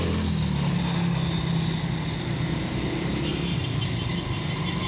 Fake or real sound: real